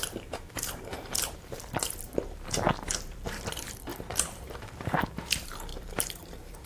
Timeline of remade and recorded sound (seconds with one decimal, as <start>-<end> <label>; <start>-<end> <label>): 0.0-6.7 remade